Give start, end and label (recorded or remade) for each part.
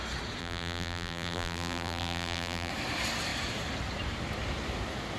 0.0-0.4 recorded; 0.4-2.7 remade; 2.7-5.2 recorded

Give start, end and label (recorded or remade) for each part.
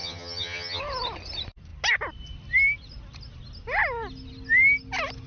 0.0-0.8 remade; 0.8-5.3 recorded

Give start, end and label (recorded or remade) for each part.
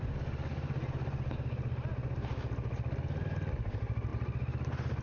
0.0-5.0 recorded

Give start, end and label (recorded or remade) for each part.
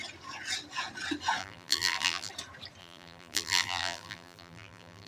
0.0-1.4 recorded; 1.4-2.3 remade; 2.3-2.8 recorded; 2.8-5.1 remade